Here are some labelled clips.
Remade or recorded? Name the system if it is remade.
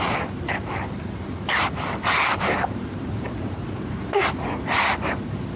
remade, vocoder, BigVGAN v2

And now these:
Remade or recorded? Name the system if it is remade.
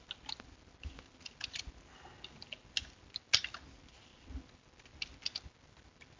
recorded